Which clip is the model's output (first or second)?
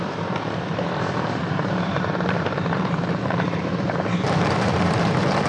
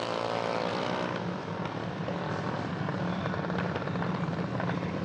first